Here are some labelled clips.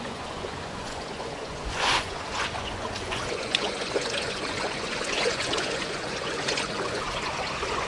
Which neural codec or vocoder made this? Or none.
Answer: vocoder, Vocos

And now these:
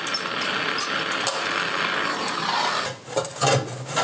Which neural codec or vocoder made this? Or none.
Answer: none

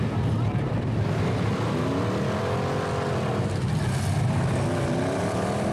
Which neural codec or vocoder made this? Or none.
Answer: none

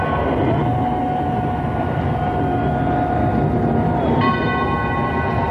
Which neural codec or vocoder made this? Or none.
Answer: none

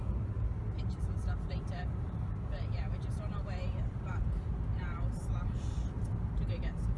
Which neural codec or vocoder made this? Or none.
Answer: vocoder, BigVGAN v2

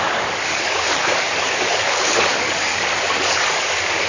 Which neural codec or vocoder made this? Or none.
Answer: codec, DAC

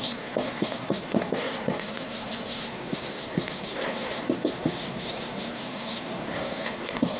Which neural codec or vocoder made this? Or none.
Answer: codec, SNAC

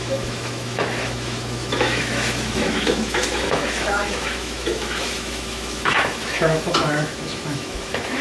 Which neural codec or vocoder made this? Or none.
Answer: autoencoder, DAC-VAE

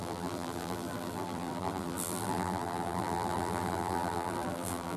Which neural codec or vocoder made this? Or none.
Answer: vocoder, BigVGAN v2